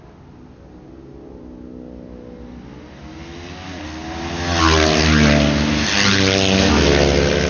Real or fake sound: real